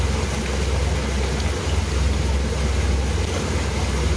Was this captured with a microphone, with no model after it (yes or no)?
yes